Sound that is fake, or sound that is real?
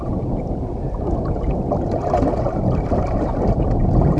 real